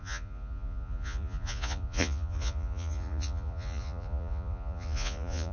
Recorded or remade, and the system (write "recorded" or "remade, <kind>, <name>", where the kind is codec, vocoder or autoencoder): remade, vocoder, Vocos